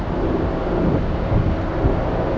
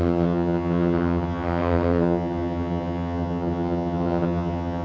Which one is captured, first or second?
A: first